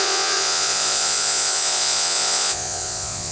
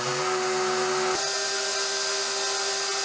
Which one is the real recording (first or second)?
second